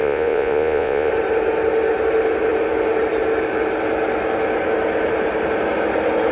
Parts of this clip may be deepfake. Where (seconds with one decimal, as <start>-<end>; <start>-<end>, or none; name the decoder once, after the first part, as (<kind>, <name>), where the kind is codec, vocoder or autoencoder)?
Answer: 0.0-1.1 (vocoder, Vocos)

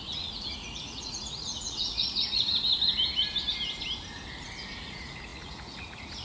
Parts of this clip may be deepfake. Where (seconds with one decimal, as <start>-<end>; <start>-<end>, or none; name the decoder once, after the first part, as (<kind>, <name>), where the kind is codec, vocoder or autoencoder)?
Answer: 0.0-2.7 (vocoder, Vocos); 4.8-6.2

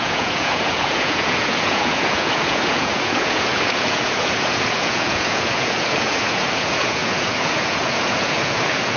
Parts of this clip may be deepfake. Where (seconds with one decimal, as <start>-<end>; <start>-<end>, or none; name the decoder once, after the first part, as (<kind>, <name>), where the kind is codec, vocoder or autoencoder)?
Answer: 0.0-9.0 (vocoder, Vocos)

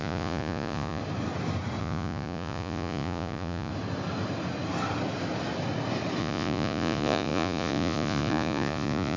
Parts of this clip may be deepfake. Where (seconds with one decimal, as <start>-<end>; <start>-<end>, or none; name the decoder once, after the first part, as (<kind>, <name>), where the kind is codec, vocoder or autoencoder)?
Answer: 0.0-1.0 (vocoder, Vocos); 1.8-3.7; 6.2-9.2

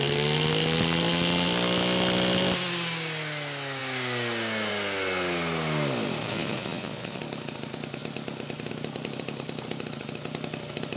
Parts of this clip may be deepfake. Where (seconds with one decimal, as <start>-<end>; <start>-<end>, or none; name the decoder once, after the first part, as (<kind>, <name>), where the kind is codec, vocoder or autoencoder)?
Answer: 6.2-7.2 (vocoder, Vocos)

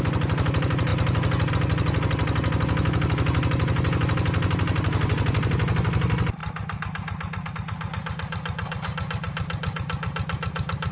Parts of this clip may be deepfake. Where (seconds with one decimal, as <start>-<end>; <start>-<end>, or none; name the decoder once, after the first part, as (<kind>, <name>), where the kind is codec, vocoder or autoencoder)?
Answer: none